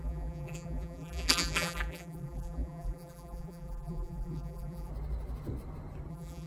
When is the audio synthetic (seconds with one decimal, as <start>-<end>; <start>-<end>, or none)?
0.0-4.9; 6.1-6.5